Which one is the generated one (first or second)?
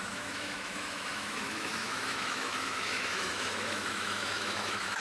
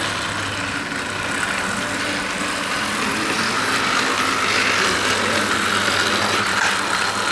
first